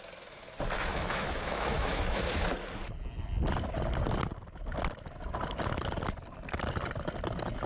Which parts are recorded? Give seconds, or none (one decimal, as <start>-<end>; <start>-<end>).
0.0-0.9; 2.2-7.7